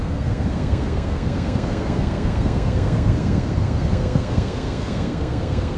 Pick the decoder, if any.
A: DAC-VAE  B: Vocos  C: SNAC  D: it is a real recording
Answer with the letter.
C